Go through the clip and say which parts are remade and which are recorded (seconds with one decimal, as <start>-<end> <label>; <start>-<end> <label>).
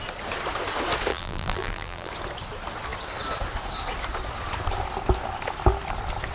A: 0.0-1.1 recorded; 1.1-2.1 remade; 2.1-6.3 recorded